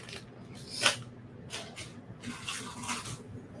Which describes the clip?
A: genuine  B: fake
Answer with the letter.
A